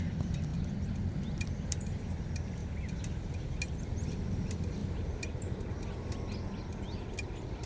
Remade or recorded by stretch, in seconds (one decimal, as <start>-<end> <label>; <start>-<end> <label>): 0.0-7.7 recorded